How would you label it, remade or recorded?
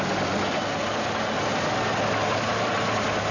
recorded